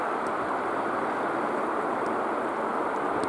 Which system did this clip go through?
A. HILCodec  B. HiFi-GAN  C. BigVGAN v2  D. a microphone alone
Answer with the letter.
D